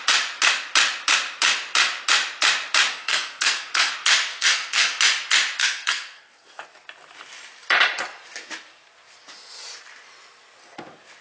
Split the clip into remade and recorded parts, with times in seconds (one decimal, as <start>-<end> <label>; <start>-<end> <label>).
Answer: 0.0-2.9 recorded; 2.9-3.9 remade; 3.9-4.3 recorded; 4.3-5.0 remade; 5.0-5.6 recorded; 5.6-6.6 remade; 6.6-11.2 recorded